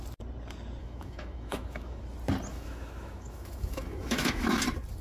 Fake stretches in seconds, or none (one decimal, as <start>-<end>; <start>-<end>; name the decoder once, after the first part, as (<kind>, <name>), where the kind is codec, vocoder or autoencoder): 0.8-2.0 (autoencoder, DAC-VAE); 2.5-4.6